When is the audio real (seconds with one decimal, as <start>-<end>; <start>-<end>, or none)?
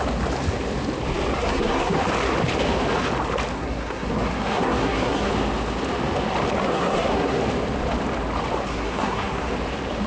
0.0-1.3; 2.0-3.5; 5.3-6.6; 7.4-8.7; 9.5-10.1